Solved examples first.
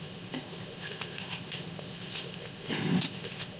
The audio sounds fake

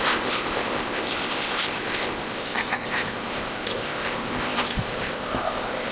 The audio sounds fake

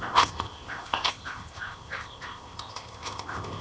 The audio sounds fake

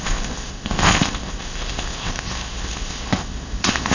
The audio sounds fake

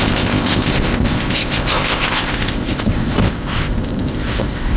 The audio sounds fake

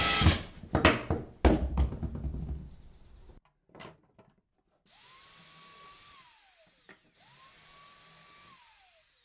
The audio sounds real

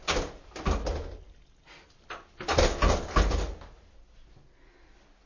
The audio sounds real